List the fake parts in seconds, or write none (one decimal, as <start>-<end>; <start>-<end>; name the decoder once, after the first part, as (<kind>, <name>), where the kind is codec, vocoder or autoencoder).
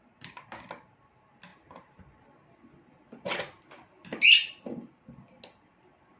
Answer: none